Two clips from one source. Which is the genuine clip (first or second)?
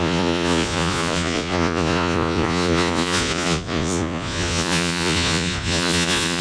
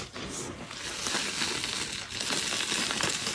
second